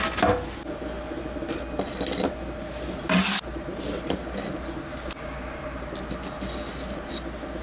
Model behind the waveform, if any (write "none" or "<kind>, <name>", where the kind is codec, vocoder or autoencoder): none